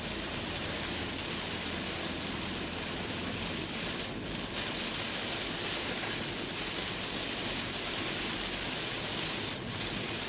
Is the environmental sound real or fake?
real